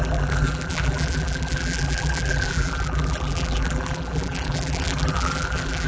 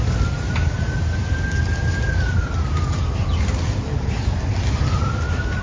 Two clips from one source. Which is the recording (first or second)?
second